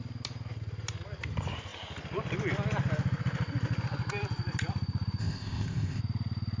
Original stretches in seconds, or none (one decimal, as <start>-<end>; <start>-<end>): 0.0-5.2; 6.0-6.6